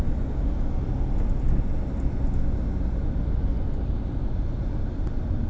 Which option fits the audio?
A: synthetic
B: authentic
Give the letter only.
B